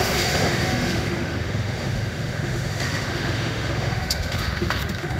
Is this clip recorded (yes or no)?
no